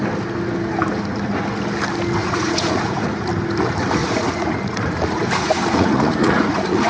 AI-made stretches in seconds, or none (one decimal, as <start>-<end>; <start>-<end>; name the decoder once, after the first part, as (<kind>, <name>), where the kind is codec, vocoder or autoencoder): 2.2-3.3 (vocoder, Vocos); 4.0-6.9